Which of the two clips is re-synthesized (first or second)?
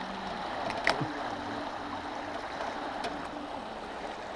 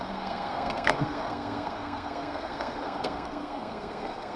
second